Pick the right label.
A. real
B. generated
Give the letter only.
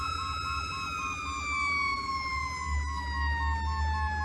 A